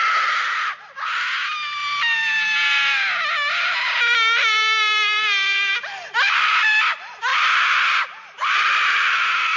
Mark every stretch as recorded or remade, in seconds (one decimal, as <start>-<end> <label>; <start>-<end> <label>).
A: 0.0-7.3 recorded; 7.3-8.6 remade; 8.6-9.6 recorded